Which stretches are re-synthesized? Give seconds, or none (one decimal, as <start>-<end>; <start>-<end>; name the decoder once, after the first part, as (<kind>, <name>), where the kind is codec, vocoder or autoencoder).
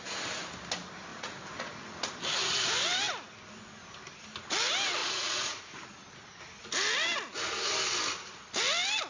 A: 1.1-2.0 (vocoder, Vocos); 5.0-5.6